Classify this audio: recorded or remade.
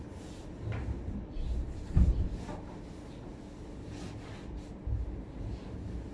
recorded